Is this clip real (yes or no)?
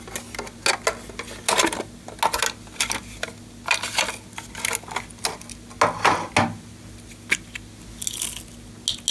yes